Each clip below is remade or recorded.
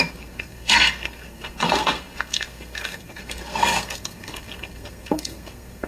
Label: remade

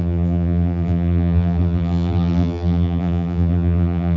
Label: remade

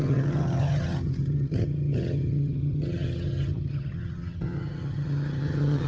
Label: remade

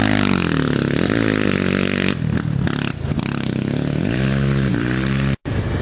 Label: remade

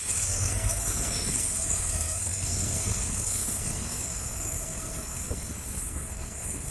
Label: remade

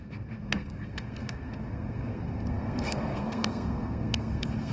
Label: remade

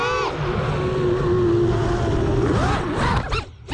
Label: recorded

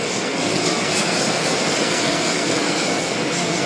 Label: remade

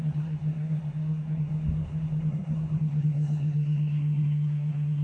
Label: remade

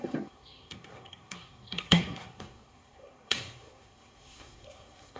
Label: remade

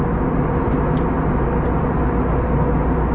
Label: recorded